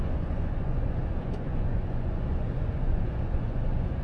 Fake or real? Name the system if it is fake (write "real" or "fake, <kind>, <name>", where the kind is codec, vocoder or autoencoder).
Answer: fake, vocoder, Vocos